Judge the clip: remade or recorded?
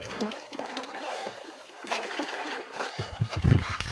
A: remade